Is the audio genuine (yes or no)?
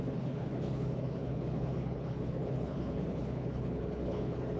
no